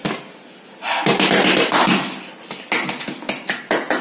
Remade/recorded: recorded